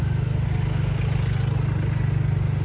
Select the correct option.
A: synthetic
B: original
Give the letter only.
B